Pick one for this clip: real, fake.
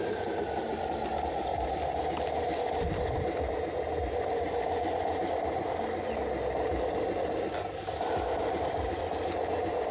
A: real